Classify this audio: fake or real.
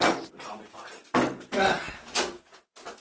real